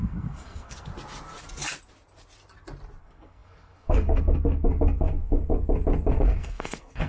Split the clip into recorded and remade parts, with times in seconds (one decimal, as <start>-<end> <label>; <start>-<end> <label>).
0.0-0.9 remade; 0.9-3.0 recorded; 3.0-5.5 remade; 5.5-6.1 recorded; 6.1-7.1 remade

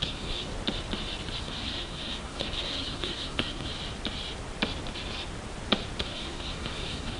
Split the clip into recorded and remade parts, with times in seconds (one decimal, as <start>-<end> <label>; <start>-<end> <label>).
0.0-0.5 remade; 0.5-1.4 recorded; 1.4-3.7 remade; 3.7-6.0 recorded; 6.0-7.2 remade

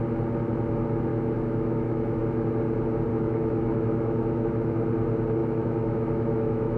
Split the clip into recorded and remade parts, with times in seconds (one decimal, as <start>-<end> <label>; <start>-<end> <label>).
0.0-1.1 recorded; 1.1-2.2 remade; 2.2-3.1 recorded; 3.1-4.5 remade; 4.5-5.4 recorded; 5.4-6.8 remade

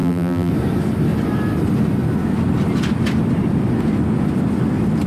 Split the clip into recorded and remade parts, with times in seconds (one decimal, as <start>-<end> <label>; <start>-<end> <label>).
0.0-0.5 remade; 0.5-5.1 recorded

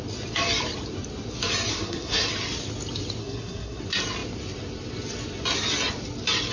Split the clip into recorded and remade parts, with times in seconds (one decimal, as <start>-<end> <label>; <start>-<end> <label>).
0.0-1.7 recorded; 1.7-2.3 remade; 2.3-3.2 recorded; 3.2-3.8 remade; 3.8-6.5 recorded

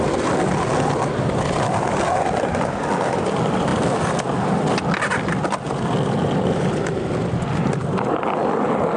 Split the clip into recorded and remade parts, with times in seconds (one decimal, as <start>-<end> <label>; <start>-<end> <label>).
0.0-9.0 recorded